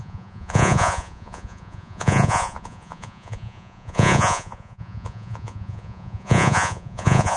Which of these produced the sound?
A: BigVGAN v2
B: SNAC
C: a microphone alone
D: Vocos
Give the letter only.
D